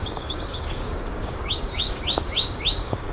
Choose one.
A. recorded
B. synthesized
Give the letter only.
B